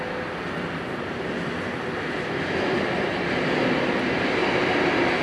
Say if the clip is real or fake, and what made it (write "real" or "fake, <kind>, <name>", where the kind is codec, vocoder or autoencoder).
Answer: real